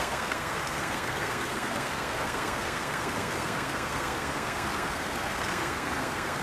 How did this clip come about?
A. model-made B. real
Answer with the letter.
A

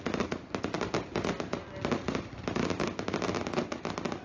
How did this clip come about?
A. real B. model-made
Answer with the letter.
A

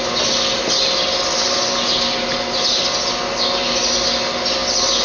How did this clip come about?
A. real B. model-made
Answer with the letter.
A